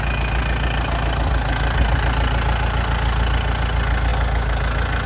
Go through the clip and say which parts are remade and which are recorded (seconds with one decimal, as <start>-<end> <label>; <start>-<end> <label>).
0.0-5.1 recorded